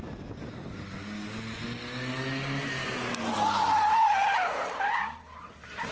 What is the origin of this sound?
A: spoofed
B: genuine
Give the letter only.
B